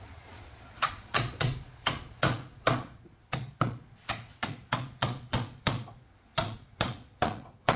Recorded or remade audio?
remade